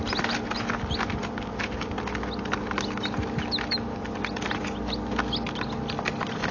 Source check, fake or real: real